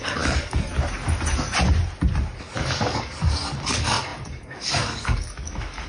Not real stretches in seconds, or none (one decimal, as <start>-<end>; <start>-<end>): 0.0-0.7; 2.4-5.9